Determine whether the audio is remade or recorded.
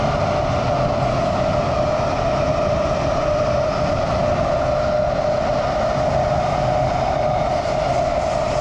recorded